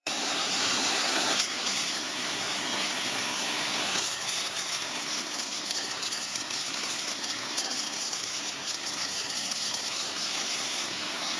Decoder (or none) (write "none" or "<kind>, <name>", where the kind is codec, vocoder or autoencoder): codec, SNAC